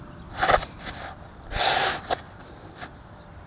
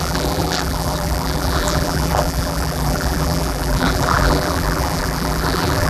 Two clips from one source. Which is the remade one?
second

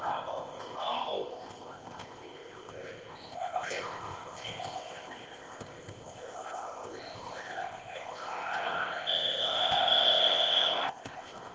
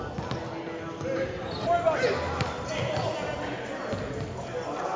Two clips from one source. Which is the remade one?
first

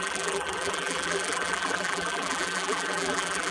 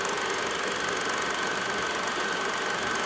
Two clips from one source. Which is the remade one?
first